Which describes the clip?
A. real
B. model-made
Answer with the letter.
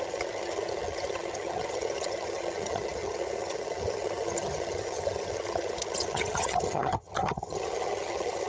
B